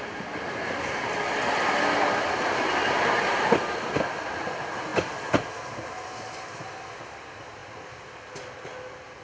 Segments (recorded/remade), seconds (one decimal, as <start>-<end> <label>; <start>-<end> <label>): 0.0-9.2 recorded